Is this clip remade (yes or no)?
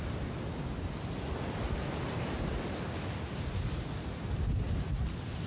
no